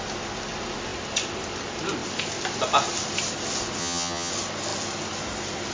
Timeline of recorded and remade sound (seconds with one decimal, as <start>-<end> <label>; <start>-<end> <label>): 0.0-3.8 recorded; 3.8-4.3 remade; 4.3-5.7 recorded